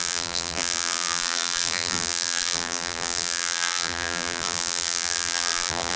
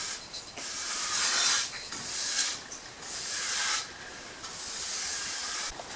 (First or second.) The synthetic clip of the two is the first